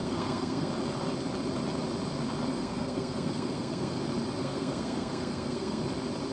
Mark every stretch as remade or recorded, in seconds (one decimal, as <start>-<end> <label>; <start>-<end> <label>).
0.0-0.7 remade; 0.7-2.5 recorded; 2.5-4.0 remade; 4.0-4.4 recorded; 4.4-5.8 remade; 5.8-6.3 recorded